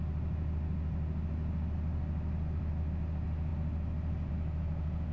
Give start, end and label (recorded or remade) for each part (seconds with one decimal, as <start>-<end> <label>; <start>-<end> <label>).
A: 0.0-5.1 recorded